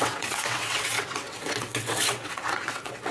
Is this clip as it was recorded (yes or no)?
no